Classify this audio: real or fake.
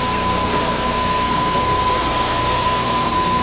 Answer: fake